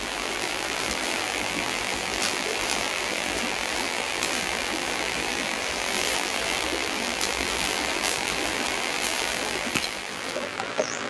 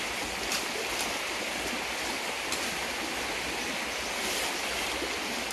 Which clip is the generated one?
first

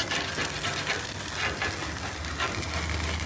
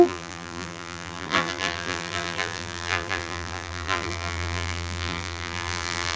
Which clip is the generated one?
second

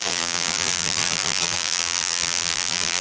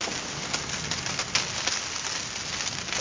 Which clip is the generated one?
first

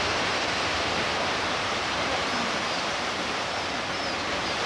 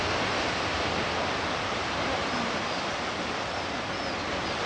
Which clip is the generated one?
first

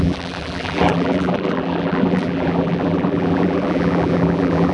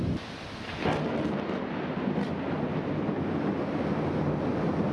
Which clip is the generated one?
first